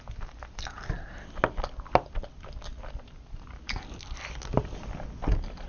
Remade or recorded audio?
recorded